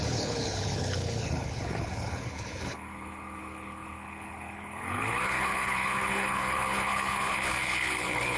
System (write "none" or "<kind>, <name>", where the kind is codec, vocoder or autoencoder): codec, HILCodec